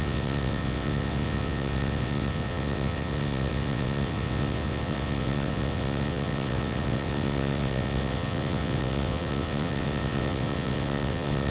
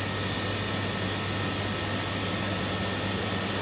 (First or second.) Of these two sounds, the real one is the second